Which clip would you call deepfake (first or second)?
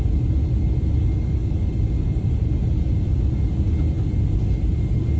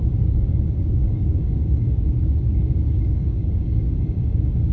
second